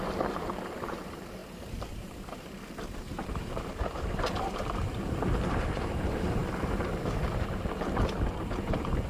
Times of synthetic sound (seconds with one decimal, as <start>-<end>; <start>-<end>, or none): 0.0-9.1